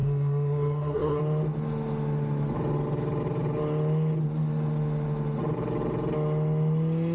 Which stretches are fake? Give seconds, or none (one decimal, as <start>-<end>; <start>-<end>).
0.0-1.2